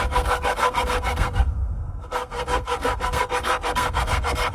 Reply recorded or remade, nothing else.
remade